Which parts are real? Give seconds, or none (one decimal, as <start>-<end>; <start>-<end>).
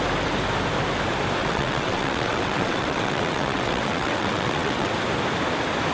0.0-1.4; 4.9-5.9